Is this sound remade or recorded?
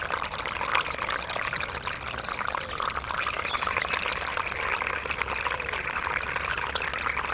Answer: recorded